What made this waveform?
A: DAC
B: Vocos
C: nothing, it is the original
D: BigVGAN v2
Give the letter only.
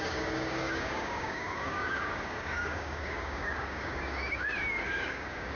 A